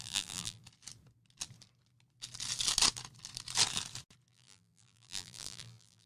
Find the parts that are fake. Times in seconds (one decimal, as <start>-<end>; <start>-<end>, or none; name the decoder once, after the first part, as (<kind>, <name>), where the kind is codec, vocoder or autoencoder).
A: 0.0-0.6 (vocoder, BigVGAN v2); 4.3-6.1